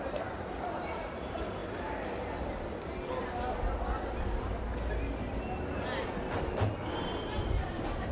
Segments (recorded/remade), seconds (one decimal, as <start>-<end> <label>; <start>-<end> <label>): 0.0-1.6 remade; 1.6-6.3 recorded; 6.3-8.1 remade